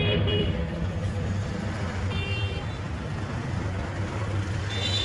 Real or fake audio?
fake